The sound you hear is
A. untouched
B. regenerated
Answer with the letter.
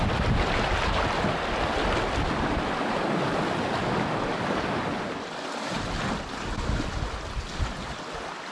A